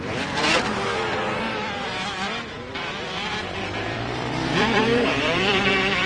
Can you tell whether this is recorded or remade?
remade